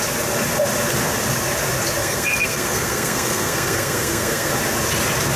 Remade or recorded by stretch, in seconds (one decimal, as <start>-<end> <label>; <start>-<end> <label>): 0.0-2.0 recorded; 2.0-4.5 remade; 4.5-5.4 recorded